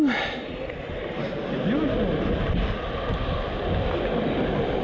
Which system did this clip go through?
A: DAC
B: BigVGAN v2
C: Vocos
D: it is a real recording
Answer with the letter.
D